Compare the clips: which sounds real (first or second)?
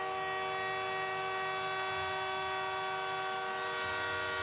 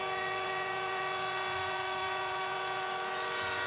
first